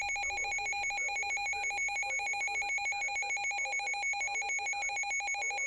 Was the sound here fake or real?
real